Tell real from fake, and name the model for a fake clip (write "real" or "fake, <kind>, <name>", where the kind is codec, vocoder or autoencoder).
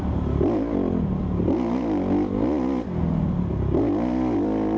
real